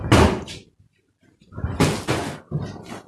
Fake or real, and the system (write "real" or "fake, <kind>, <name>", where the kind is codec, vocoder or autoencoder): real